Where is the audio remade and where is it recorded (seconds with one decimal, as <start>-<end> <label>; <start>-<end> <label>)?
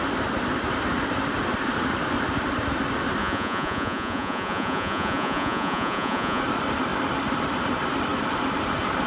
0.0-3.2 recorded; 3.2-6.4 remade; 6.4-9.1 recorded